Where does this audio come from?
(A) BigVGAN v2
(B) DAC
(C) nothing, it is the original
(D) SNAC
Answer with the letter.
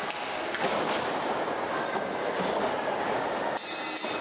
C